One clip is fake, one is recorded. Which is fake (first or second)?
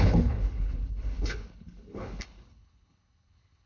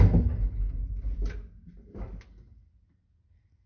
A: first